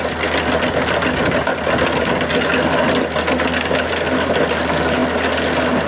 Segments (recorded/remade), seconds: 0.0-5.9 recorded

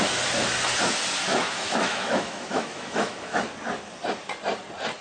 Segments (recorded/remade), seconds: 0.0-1.3 recorded; 1.3-3.4 remade; 3.4-5.0 recorded

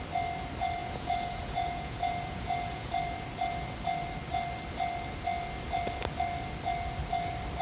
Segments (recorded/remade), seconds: 0.0-0.8 recorded; 0.8-2.9 remade; 2.9-7.6 recorded

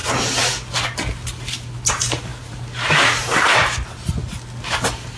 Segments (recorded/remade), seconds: 0.0-5.2 recorded

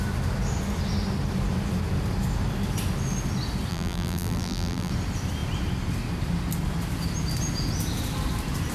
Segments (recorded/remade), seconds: 0.0-3.7 recorded; 3.7-4.9 remade; 4.9-8.7 recorded